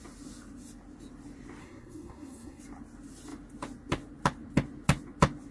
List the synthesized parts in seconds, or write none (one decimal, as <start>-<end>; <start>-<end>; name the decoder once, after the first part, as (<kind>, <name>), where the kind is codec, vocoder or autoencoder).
1.6-2.6 (codec, SNAC)